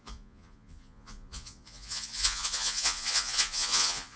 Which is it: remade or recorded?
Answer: remade